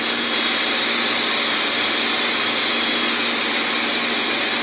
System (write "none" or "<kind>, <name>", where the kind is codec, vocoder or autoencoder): none